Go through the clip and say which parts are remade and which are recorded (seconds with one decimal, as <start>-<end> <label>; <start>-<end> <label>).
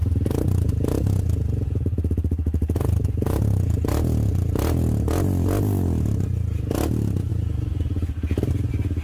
0.0-9.0 recorded